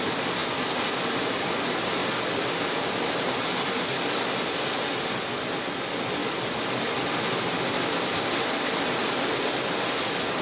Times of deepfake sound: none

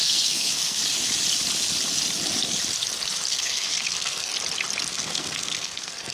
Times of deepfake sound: 0.0-0.8 (codec, SNAC); 3.3-4.3; 4.9-6.1